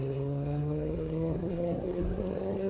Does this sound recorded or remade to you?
remade